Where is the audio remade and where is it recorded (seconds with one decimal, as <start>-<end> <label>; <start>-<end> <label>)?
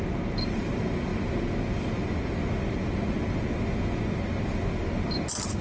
0.0-5.6 recorded